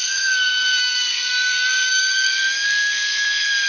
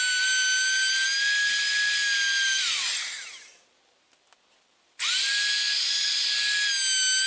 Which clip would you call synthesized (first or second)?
first